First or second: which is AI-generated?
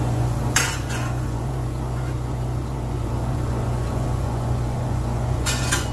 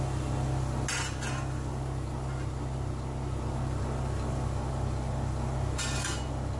first